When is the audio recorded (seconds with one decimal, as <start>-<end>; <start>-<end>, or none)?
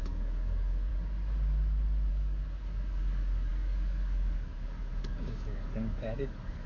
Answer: 0.9-2.1